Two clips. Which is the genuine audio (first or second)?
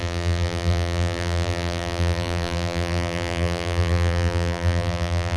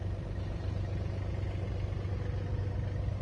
second